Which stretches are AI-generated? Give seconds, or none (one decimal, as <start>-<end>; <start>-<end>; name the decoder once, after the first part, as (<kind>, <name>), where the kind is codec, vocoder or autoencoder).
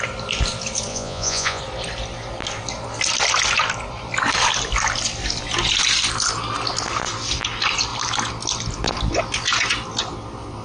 0.9-1.6 (vocoder, Vocos)